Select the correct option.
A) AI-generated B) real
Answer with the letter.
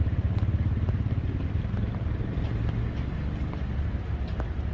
B